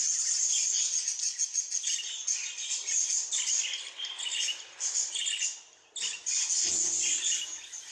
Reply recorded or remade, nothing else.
recorded